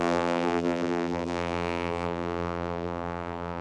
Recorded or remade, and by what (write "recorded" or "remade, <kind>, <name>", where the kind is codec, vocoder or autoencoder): remade, vocoder, BigVGAN v2